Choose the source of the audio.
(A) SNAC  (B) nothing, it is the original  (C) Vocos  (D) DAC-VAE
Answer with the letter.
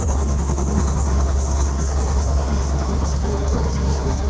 A